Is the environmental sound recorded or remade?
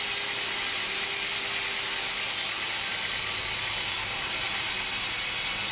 recorded